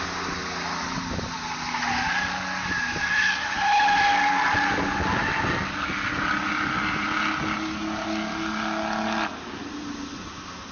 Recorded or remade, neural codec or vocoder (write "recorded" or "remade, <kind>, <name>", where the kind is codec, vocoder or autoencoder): recorded